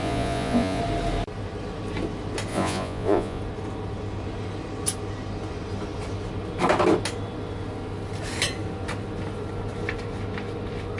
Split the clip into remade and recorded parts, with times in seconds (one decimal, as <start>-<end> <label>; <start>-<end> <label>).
0.0-0.8 remade; 0.8-2.5 recorded; 2.5-3.4 remade; 3.4-11.0 recorded